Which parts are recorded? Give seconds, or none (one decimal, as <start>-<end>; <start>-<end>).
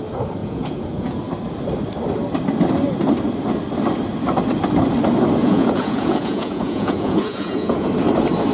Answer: 0.0-0.4; 1.2-5.4; 7.9-8.5